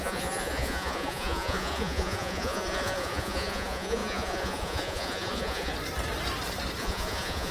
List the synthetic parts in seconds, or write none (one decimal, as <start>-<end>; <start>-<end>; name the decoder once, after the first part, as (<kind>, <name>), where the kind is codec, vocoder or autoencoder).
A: 0.0-5.7 (vocoder, Vocos); 6.8-7.5